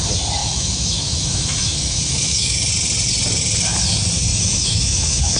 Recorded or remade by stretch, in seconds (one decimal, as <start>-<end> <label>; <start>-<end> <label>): 0.0-0.4 recorded; 0.4-2.7 remade; 2.7-4.3 recorded; 4.3-5.4 remade